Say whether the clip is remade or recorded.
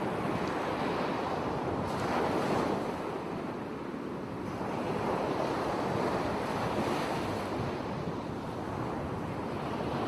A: remade